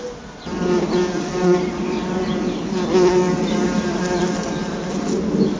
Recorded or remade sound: recorded